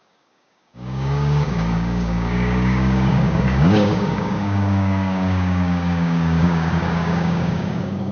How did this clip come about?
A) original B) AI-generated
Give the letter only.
B